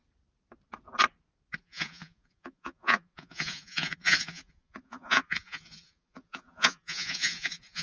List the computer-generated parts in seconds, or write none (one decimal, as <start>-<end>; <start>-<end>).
1.6-7.8